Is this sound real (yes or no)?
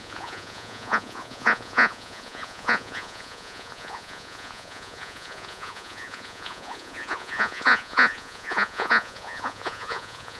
no